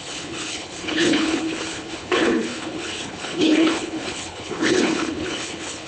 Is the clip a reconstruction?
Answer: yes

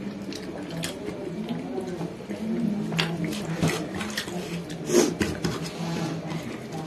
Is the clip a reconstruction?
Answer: no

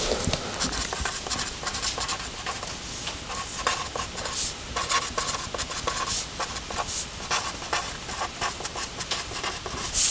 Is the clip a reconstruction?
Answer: no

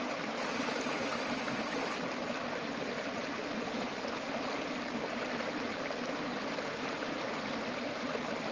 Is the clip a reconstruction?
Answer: yes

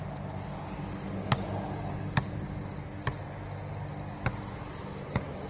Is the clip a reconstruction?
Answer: no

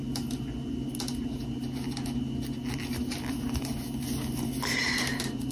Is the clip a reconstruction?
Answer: no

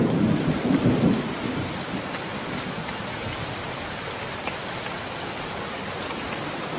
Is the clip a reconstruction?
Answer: no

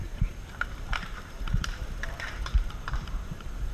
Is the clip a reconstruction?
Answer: yes